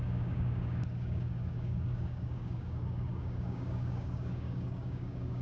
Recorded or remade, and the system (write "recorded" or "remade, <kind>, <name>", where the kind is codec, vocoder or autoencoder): remade, codec, DAC